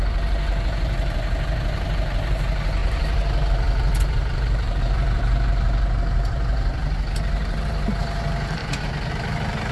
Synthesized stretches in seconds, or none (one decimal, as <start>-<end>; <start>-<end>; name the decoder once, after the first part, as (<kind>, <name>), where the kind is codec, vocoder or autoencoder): 0.0-8.6 (vocoder, BigVGAN v2); 9.1-9.7